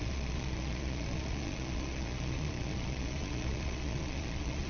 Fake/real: fake